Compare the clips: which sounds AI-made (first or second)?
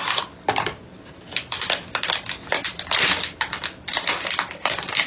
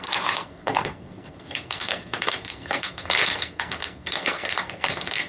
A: second